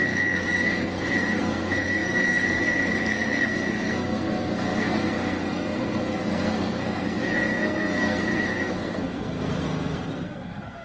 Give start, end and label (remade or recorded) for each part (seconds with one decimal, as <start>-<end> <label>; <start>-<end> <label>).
0.0-10.8 remade